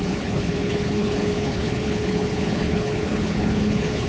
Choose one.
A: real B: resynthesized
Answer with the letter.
B